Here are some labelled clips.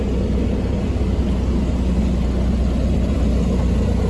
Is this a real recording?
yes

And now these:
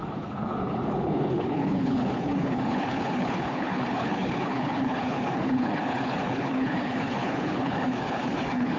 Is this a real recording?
no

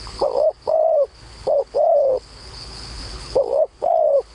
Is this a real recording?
no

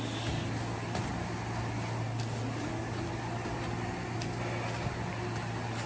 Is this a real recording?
yes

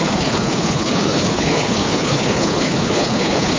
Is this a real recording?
no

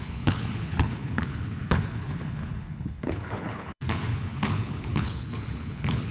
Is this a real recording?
no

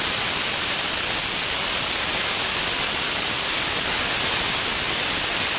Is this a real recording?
yes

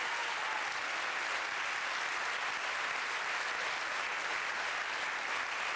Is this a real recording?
yes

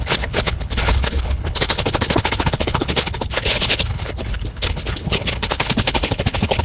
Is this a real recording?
no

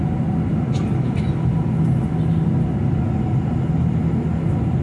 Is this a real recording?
yes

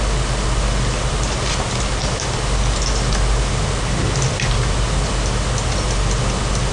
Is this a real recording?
yes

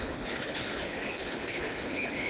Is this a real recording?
no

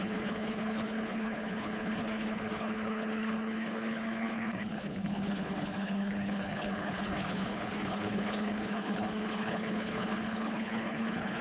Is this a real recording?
no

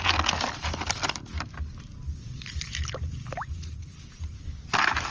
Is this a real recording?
yes